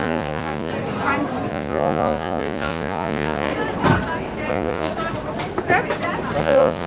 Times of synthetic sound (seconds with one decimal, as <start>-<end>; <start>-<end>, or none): 0.0-0.7; 1.5-3.5; 4.5-4.9; 6.4-6.9